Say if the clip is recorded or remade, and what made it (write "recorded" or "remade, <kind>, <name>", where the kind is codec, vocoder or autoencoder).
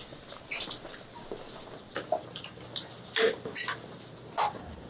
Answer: recorded